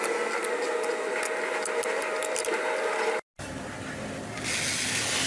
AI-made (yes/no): no